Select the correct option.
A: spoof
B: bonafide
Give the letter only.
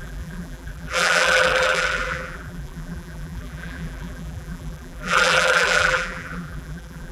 A